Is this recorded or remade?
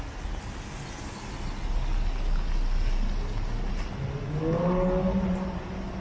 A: recorded